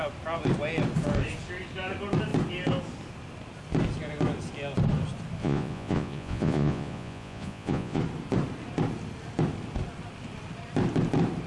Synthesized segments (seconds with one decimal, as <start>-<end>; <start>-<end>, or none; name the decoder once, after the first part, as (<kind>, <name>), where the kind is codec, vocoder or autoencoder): 5.4-8.0 (vocoder, Vocos)